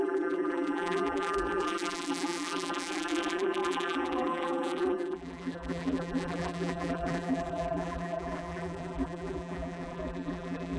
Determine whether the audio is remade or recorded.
remade